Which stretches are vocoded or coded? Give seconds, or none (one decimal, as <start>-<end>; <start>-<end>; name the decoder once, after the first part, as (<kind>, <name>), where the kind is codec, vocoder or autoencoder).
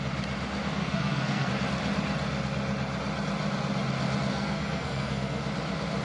0.8-1.5 (codec, SNAC); 4.3-5.4